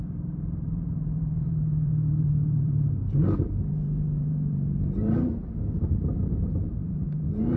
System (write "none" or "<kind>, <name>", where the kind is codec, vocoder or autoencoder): vocoder, BigVGAN v2